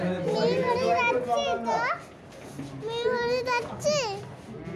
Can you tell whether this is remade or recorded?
recorded